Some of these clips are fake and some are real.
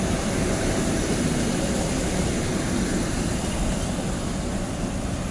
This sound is real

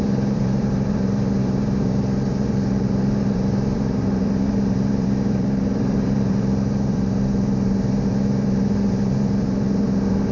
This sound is fake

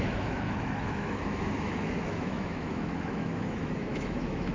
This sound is fake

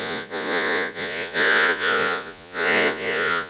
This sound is fake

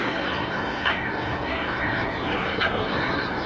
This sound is fake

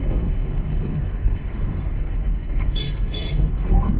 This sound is fake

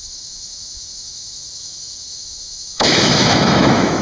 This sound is fake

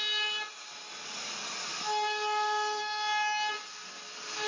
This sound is real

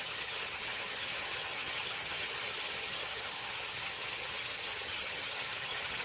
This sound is fake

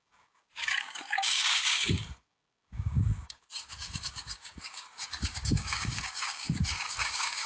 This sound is fake